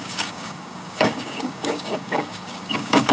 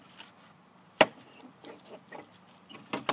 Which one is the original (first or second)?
second